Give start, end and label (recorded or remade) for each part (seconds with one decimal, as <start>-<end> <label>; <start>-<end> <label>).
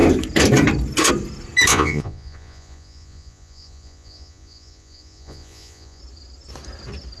0.0-1.7 recorded; 1.7-6.0 remade; 6.0-7.2 recorded